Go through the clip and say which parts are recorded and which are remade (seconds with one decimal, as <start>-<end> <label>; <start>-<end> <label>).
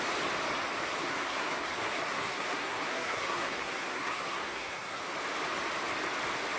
0.0-1.0 recorded; 1.0-5.0 remade; 5.0-6.6 recorded